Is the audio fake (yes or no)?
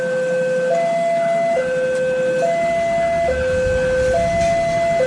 no